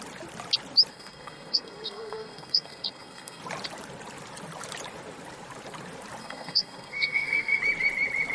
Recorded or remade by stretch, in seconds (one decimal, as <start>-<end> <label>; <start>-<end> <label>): 0.0-0.9 recorded; 0.9-3.4 remade; 3.4-6.2 recorded; 6.2-7.6 remade; 7.6-8.3 recorded